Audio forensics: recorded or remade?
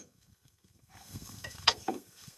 remade